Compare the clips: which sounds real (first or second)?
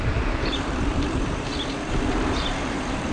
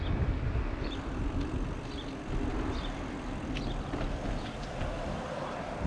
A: second